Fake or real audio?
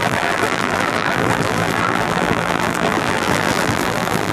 fake